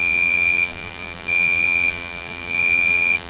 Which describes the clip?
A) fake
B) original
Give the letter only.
A